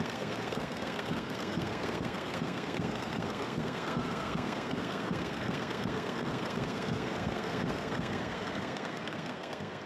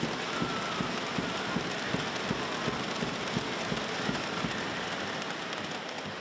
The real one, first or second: second